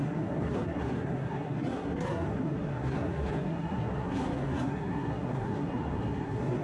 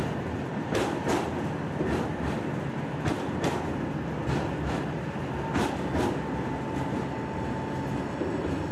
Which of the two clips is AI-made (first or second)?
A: first